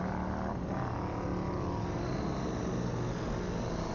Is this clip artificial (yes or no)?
no